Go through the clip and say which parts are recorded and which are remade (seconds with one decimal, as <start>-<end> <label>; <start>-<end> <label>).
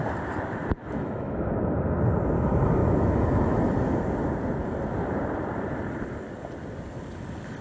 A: 0.0-0.8 recorded; 0.8-1.5 remade; 1.5-2.8 recorded; 2.8-3.9 remade; 3.9-7.6 recorded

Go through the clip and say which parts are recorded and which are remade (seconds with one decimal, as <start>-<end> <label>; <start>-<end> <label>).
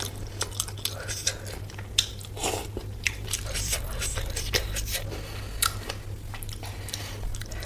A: 0.0-2.4 recorded; 2.4-4.2 remade; 4.2-7.7 recorded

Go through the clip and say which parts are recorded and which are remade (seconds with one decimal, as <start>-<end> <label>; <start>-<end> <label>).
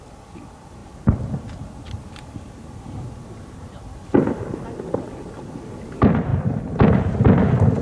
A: 0.0-6.3 recorded; 6.3-7.0 remade; 7.0-7.8 recorded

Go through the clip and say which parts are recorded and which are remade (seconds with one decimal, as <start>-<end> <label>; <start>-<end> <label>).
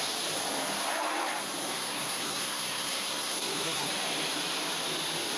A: 0.0-1.6 recorded; 1.6-3.9 remade; 3.9-5.4 recorded